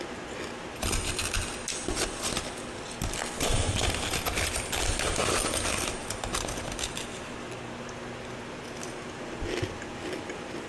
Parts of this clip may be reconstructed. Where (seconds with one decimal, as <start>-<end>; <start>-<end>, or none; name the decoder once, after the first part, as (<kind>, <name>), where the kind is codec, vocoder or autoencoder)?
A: none